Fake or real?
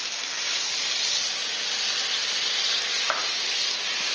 real